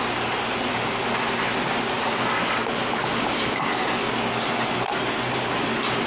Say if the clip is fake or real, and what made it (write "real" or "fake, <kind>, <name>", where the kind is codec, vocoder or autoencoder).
real